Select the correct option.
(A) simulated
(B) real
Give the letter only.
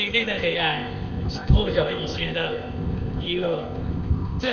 A